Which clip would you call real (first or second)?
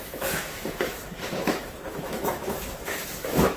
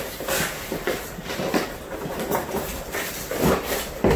second